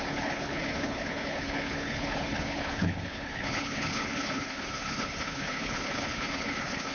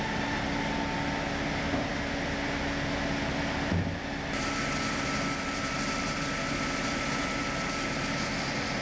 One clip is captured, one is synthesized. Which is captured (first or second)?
second